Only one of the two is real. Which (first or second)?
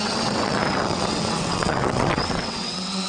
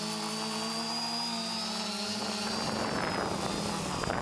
second